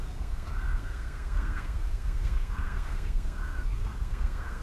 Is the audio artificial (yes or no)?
yes